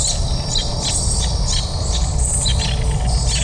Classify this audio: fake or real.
real